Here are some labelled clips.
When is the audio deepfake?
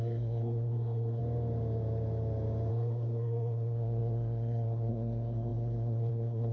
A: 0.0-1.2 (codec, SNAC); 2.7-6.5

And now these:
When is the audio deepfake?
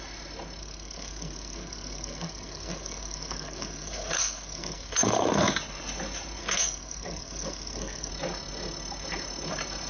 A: 0.6-5.5 (codec, SNAC); 6.4-8.1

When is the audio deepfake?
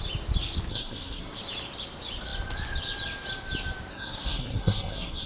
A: 0.7-1.4 (codec, SNAC); 3.9-5.3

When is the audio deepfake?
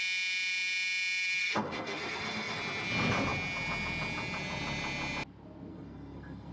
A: 1.4-2.6 (codec, SNAC); 5.7-6.5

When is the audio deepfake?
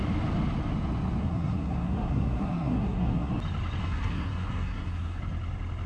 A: 1.2-3.3 (codec, SNAC); 3.8-5.2